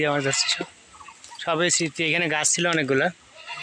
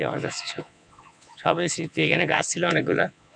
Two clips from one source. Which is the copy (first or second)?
second